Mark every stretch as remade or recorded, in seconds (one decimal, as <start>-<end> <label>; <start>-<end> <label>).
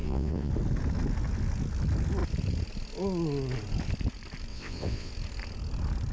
0.0-0.5 remade; 0.5-4.5 recorded; 4.5-5.1 remade; 5.1-6.1 recorded